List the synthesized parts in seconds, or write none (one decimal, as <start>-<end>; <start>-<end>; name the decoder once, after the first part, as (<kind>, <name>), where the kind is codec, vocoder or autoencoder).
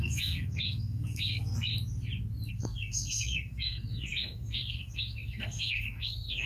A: 0.0-1.7 (codec, SNAC); 2.5-6.5